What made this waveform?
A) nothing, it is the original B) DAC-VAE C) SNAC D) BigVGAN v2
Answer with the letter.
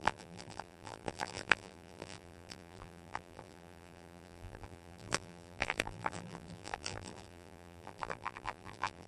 D